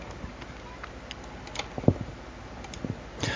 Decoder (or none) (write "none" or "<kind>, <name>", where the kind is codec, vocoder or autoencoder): none